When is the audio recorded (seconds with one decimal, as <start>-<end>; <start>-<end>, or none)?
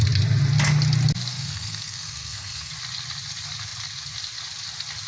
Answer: 0.0-1.3; 2.7-5.1